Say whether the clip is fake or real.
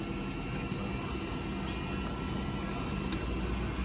real